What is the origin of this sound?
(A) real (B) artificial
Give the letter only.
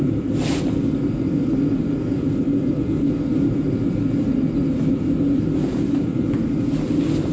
A